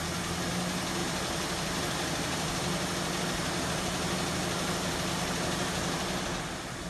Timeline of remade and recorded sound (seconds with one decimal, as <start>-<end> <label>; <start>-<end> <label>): 0.0-6.9 recorded